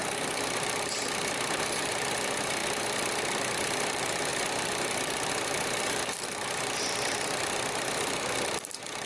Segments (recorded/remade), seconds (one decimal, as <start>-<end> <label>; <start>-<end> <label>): 0.0-1.6 recorded; 1.6-2.6 remade; 2.6-3.6 recorded; 3.6-4.3 remade; 4.3-5.3 recorded; 5.3-9.1 remade

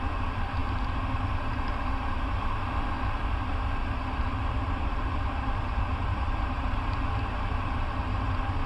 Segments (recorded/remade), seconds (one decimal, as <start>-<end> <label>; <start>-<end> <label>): 0.0-4.9 recorded; 4.9-8.7 remade

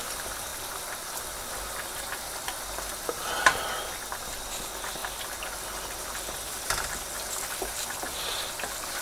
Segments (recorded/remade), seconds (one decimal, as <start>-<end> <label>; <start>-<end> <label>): 0.0-9.0 recorded

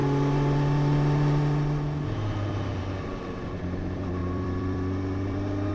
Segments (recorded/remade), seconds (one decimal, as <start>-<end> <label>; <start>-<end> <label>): 0.0-4.2 recorded; 4.2-5.7 remade